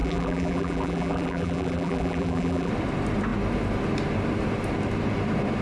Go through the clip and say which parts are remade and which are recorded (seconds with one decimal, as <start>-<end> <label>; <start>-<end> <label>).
0.0-2.7 remade; 2.7-5.6 recorded